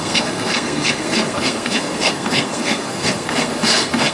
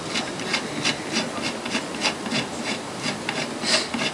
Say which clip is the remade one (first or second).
first